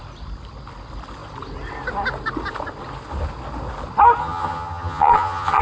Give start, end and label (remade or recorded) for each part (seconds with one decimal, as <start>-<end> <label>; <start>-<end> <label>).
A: 0.0-4.2 recorded; 4.2-5.6 remade